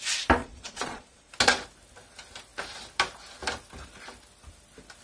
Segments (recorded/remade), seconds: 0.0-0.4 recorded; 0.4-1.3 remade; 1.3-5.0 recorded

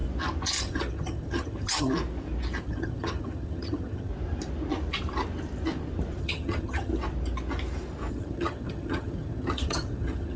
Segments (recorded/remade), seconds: 0.0-0.6 recorded; 0.6-1.9 remade; 1.9-2.6 recorded; 2.6-4.1 remade; 4.1-6.2 recorded; 6.2-6.9 remade; 6.9-8.1 recorded; 8.1-10.4 remade

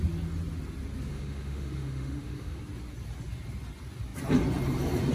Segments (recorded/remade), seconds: 0.0-1.1 recorded; 1.1-2.6 remade; 2.6-5.1 recorded